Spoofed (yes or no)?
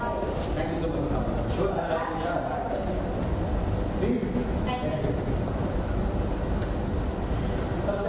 no